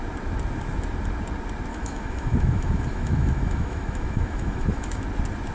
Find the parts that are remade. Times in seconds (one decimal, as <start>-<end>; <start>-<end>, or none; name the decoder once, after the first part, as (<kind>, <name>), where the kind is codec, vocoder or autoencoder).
1.7-5.0 (autoencoder, DAC-VAE)